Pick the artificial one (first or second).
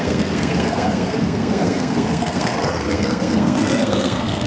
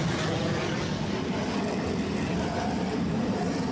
first